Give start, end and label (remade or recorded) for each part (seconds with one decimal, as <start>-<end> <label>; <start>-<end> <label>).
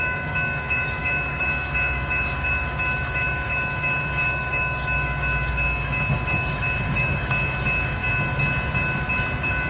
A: 0.0-8.0 remade; 8.0-9.7 recorded